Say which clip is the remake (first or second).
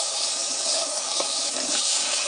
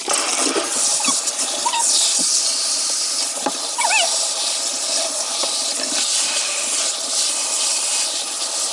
first